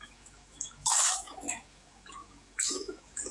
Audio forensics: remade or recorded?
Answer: remade